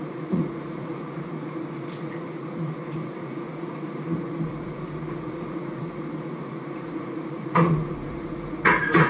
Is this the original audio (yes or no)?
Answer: no